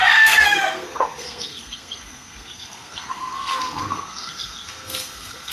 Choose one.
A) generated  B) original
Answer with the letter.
A